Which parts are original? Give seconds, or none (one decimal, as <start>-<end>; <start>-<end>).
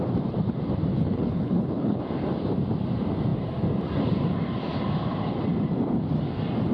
0.0-0.9; 2.0-6.7